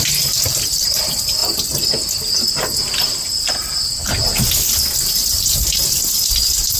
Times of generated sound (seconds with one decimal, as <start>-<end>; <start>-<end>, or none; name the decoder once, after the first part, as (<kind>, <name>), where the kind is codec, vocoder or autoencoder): 5.2-6.8 (vocoder, BigVGAN v2)